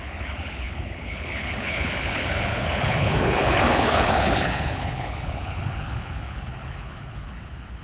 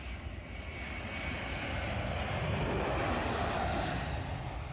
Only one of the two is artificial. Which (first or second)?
first